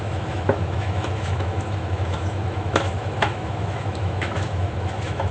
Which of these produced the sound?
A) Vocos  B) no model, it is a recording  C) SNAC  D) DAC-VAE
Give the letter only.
D